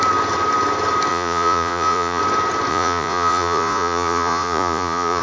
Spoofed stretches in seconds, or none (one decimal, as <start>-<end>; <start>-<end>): 1.1-2.2; 2.7-5.2